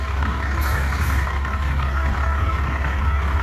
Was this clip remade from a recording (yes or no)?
yes